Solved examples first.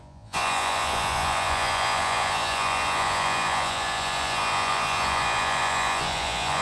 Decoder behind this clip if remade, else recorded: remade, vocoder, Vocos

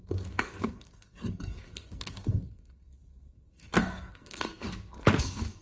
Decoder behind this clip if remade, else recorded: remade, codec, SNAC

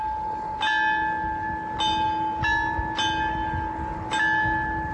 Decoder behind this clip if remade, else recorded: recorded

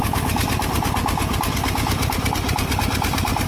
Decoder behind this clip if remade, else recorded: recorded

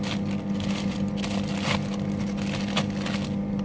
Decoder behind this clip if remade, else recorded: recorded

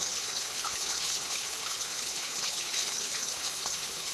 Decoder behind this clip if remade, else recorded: remade, codec, HILCodec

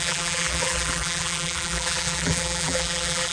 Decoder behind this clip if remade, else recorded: remade, vocoder, BigVGAN v2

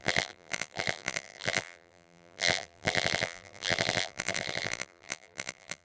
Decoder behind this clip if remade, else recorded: remade, vocoder, BigVGAN v2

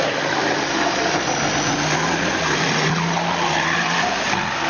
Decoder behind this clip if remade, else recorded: recorded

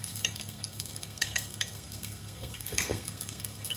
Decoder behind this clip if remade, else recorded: remade, codec, SNAC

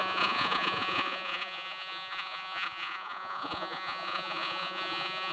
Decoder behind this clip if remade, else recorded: remade, vocoder, Vocos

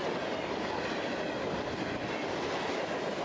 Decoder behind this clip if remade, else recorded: recorded